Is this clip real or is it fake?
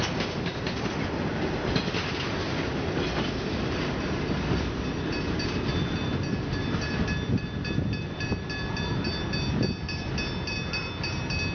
real